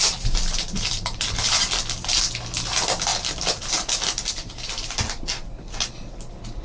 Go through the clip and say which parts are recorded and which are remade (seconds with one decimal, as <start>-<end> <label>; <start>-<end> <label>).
0.0-6.6 recorded